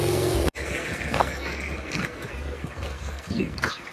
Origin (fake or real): fake